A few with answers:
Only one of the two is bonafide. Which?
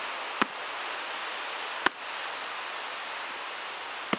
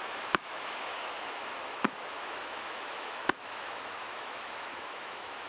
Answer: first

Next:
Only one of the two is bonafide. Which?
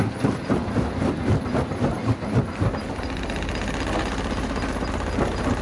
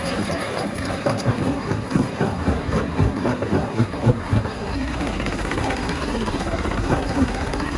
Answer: first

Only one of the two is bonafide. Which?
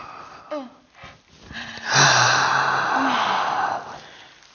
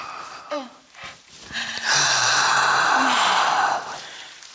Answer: first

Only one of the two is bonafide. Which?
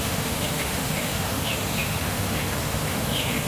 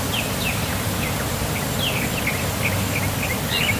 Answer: second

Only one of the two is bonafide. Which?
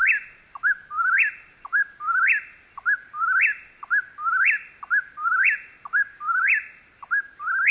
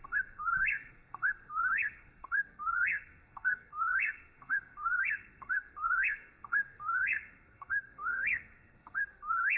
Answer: first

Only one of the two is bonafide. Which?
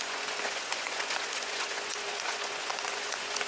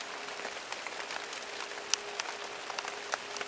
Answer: second